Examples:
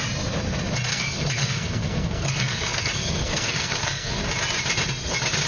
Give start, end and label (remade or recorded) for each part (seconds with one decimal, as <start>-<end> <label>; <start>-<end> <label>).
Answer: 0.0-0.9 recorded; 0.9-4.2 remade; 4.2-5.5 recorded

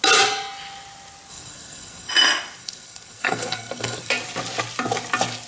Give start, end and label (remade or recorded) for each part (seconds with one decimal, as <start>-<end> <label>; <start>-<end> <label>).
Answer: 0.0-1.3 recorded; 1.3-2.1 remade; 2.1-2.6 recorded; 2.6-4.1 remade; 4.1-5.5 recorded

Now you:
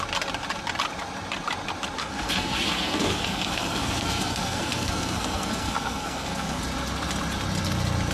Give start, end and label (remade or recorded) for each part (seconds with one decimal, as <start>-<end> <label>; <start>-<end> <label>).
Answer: 0.0-2.0 recorded; 2.0-6.6 remade; 6.6-8.1 recorded

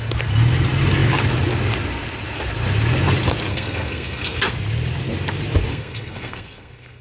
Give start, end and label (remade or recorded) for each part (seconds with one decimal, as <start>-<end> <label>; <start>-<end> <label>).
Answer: 0.0-3.5 recorded; 3.5-4.5 remade; 4.5-5.7 recorded; 5.7-7.0 remade